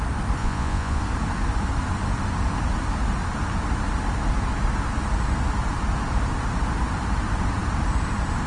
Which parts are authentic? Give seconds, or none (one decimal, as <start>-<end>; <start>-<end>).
0.0-0.4; 1.0-8.5